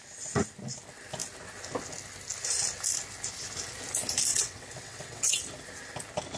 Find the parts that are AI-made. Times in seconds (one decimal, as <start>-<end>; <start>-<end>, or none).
4.3-5.4